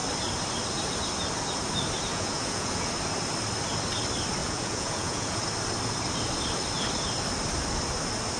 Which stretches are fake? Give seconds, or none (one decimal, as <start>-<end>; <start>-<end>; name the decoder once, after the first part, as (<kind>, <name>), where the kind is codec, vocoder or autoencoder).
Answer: 2.1-2.9 (vocoder, Vocos); 4.4-5.4